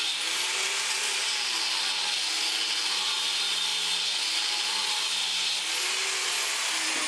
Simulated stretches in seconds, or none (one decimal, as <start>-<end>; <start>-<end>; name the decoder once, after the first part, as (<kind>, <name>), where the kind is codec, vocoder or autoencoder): none